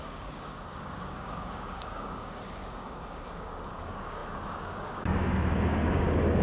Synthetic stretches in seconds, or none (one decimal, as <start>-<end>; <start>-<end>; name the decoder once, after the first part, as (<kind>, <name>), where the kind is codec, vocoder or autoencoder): 0.0-6.4 (codec, DAC)